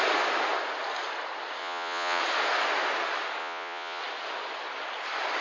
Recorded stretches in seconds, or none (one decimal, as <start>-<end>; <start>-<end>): 0.0-1.6; 2.2-3.4; 4.0-5.4